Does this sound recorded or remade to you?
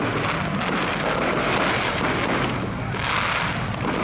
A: recorded